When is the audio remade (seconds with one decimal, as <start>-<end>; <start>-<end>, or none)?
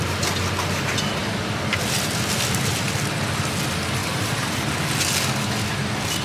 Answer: 1.2-2.9; 4.0-4.7